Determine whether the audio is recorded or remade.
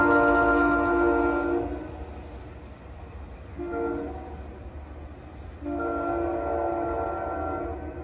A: recorded